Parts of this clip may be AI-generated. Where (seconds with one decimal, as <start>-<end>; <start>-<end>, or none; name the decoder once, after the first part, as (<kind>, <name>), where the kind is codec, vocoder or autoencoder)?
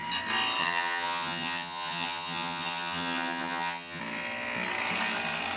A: 0.6-4.0 (vocoder, HiFi-GAN)